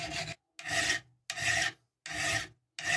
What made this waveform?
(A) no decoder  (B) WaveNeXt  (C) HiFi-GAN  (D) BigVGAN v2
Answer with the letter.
A